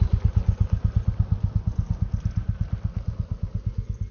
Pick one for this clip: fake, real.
real